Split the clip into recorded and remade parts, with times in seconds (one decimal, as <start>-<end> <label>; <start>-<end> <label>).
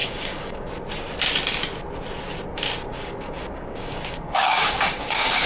0.0-0.7 remade; 0.7-2.9 recorded; 2.9-5.5 remade